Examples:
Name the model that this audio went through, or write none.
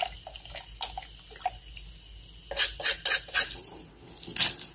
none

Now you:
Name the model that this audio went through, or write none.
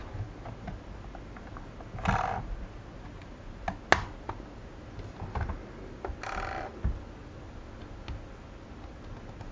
none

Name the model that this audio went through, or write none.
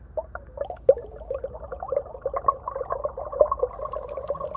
none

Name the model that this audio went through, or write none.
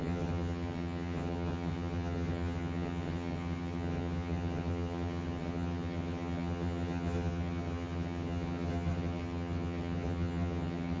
vocoder, HiFi-GAN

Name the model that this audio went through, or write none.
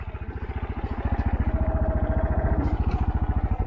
none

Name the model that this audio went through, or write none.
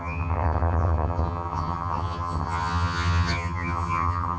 vocoder, HiFi-GAN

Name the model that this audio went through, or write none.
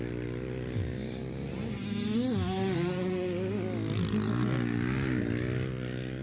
none